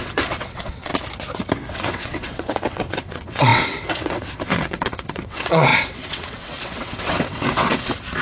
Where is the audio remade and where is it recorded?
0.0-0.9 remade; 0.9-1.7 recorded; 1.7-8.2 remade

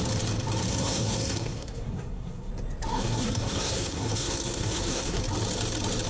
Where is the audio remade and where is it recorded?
0.0-0.7 recorded; 0.7-2.5 remade; 2.5-2.9 recorded; 2.9-5.2 remade; 5.2-6.1 recorded

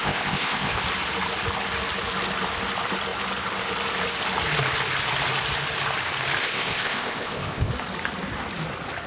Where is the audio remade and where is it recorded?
0.0-0.8 remade; 0.8-6.4 recorded; 6.4-7.7 remade; 7.7-9.1 recorded